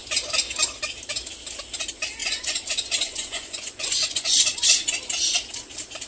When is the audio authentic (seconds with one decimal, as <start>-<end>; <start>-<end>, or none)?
0.0-2.2; 5.0-6.1